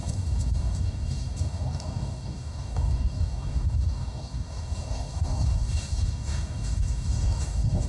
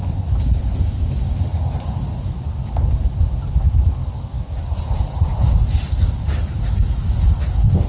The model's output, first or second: first